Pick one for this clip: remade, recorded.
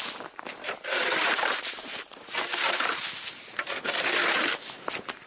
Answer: remade